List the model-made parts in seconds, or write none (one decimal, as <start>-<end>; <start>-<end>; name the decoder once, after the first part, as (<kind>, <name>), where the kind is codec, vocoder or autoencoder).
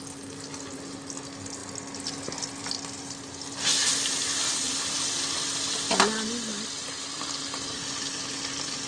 none